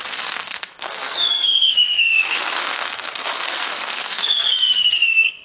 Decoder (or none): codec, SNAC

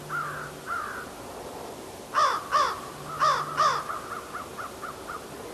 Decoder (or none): none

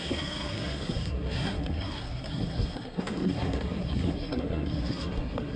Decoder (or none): codec, SNAC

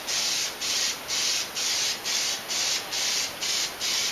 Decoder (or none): none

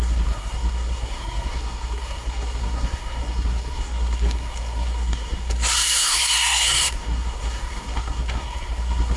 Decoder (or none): codec, SNAC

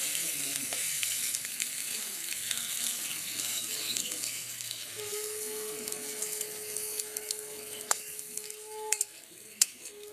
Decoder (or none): codec, SNAC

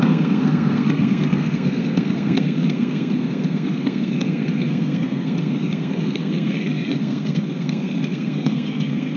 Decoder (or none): codec, SNAC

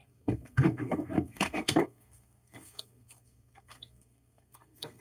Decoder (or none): codec, SNAC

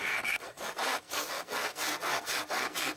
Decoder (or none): codec, SNAC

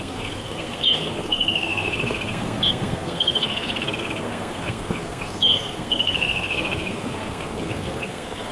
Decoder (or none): codec, SNAC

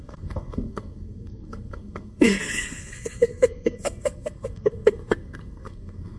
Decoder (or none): codec, SNAC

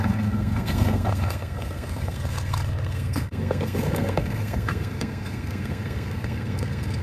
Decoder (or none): codec, SNAC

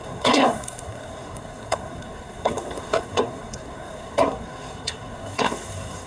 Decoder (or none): codec, SNAC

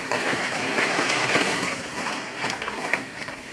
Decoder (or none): codec, SNAC